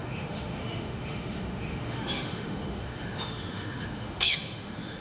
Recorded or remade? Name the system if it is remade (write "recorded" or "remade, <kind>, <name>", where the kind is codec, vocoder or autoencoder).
remade, autoencoder, DAC-VAE